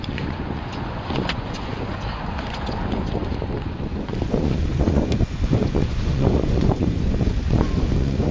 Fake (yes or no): yes